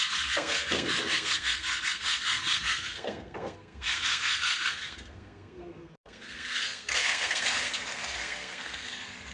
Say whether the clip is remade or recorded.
remade